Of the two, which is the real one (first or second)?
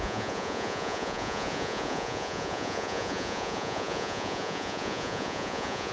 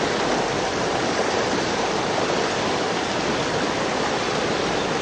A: second